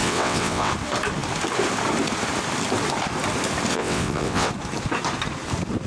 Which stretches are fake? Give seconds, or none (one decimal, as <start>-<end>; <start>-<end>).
0.0-0.7; 3.7-4.5